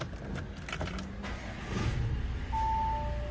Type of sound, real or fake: real